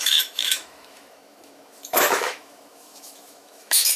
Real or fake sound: fake